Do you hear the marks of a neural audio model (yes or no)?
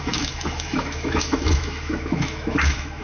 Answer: yes